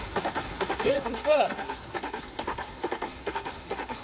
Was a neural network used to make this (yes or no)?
yes